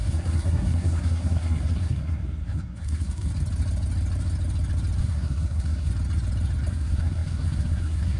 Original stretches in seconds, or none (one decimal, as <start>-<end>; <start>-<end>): 3.3-5.0; 5.9-6.7